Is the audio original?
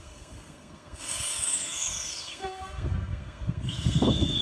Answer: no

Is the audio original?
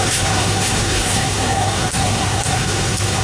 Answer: no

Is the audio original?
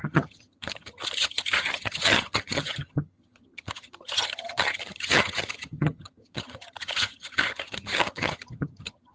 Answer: no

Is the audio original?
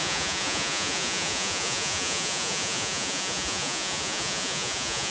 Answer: no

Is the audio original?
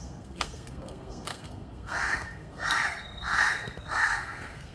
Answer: no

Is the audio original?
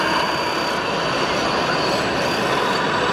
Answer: yes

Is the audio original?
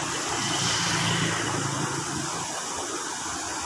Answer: yes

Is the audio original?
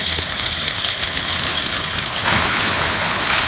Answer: no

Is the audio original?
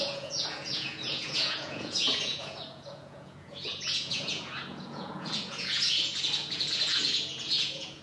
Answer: no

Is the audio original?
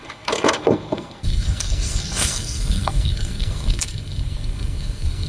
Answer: no